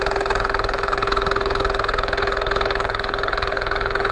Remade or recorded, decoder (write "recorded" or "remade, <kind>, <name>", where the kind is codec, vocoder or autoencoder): remade, codec, HILCodec